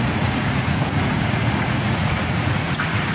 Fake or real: fake